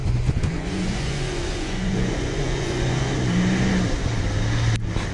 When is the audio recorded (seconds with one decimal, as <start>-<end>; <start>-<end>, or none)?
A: 3.1-5.1